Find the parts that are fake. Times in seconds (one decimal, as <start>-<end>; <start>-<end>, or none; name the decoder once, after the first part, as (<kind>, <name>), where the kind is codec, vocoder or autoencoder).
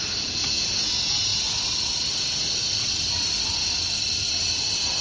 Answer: none